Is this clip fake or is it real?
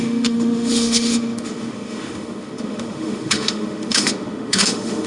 fake